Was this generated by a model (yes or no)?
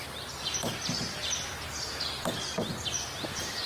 no